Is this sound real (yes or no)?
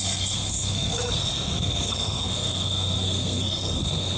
no